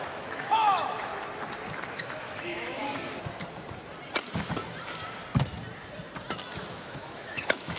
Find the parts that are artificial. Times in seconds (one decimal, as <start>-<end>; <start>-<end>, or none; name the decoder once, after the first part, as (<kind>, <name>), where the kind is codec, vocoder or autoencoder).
0.0-1.1 (autoencoder, DAC-VAE); 1.9-2.8; 6.6-7.8